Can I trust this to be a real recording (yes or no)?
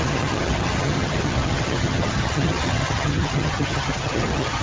no